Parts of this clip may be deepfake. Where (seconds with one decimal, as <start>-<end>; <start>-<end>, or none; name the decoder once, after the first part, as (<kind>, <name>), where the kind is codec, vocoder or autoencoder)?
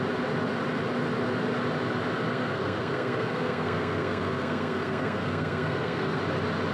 2.3-6.2 (codec, SNAC)